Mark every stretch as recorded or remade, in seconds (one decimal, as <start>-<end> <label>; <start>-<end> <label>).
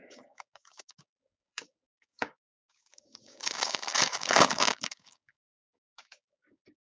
0.0-6.9 remade